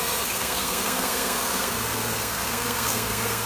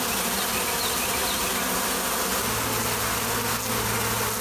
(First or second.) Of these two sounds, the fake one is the first